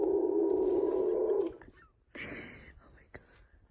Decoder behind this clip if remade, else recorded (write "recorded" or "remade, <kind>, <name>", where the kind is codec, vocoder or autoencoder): recorded